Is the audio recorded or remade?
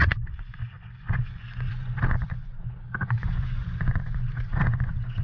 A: remade